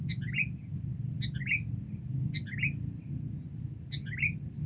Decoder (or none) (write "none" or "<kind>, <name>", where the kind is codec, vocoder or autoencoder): none